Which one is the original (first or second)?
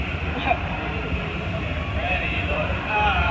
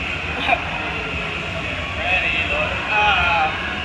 second